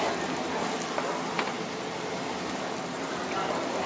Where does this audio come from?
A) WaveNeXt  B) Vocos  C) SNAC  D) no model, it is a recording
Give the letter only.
D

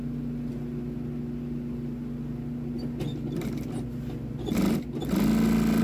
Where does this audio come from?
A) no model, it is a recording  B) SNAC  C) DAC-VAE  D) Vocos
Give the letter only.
A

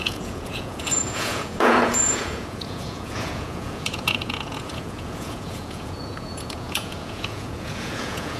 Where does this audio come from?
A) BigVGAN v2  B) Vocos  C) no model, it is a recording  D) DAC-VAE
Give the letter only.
B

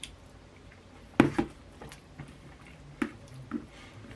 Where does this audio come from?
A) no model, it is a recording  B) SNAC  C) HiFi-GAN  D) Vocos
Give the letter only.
A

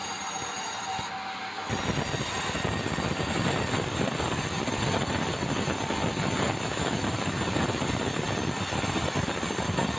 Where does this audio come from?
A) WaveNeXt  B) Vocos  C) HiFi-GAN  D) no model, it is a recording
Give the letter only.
D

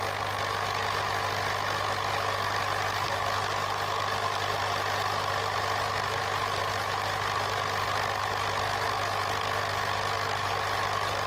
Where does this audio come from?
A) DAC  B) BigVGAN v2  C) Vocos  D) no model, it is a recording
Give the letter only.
D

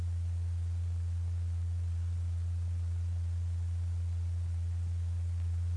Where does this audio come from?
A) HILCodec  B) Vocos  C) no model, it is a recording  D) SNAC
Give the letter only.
C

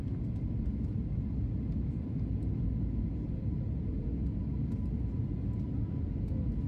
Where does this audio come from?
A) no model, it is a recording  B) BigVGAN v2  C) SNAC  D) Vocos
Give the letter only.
A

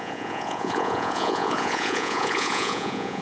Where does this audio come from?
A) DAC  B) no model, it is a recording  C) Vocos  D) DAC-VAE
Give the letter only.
C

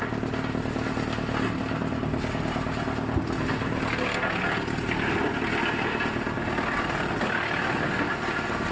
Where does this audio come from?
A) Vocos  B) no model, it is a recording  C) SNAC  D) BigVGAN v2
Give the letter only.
B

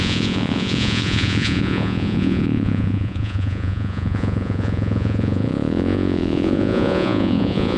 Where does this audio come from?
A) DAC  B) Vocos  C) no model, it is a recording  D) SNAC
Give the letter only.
B